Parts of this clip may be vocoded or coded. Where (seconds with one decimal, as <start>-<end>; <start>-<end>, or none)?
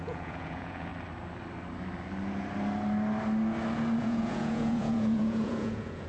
0.0-0.9; 4.0-6.1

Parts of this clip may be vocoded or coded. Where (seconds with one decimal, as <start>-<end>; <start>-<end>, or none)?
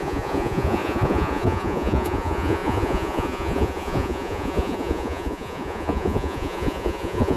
0.0-7.4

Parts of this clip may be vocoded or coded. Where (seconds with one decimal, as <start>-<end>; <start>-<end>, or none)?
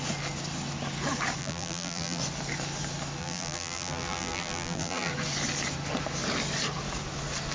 1.4-2.2; 3.2-5.1